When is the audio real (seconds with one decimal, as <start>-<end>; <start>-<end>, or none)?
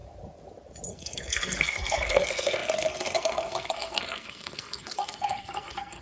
0.0-0.9